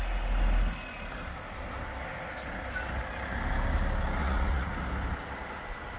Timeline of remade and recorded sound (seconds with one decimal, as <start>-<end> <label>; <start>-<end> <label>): 0.0-4.2 recorded; 4.2-4.7 remade; 4.7-6.0 recorded